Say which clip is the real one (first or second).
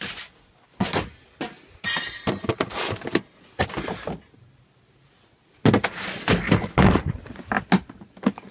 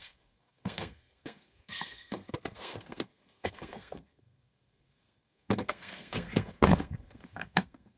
first